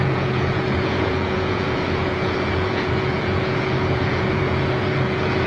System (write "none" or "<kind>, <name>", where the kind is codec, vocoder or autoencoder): vocoder, Vocos